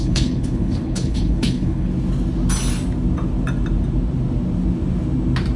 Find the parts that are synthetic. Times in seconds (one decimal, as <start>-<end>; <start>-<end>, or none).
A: 0.0-1.9